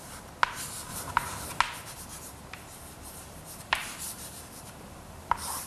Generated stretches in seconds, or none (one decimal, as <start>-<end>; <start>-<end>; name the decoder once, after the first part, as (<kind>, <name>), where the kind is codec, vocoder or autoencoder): 0.9-1.6 (vocoder, BigVGAN v2); 2.1-5.7